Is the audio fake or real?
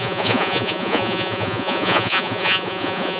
fake